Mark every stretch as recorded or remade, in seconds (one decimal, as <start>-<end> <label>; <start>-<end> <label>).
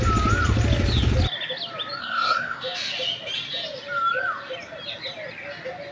0.0-2.0 recorded; 2.0-2.6 remade; 2.6-5.9 recorded